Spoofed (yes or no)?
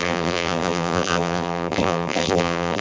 yes